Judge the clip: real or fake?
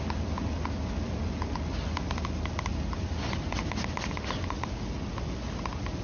real